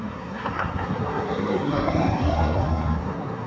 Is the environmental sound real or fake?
fake